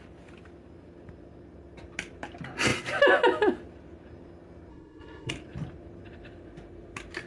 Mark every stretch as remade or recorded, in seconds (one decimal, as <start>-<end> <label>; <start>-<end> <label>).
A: 0.0-4.7 recorded; 4.7-5.3 remade; 5.3-7.3 recorded